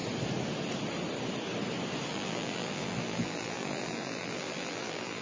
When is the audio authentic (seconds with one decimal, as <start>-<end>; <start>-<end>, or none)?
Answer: 0.0-2.1